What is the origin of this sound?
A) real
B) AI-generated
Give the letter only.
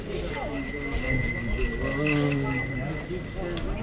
A